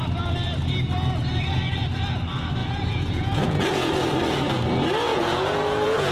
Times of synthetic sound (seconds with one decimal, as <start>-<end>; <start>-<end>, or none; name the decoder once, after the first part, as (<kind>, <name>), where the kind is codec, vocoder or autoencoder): 2.6-3.9 (vocoder, Vocos); 5.1-6.1